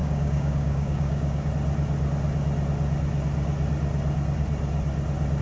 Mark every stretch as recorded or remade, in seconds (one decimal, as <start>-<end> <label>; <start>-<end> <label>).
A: 0.0-1.5 remade; 1.5-5.4 recorded